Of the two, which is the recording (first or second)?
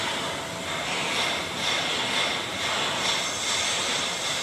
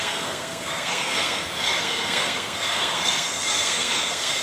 first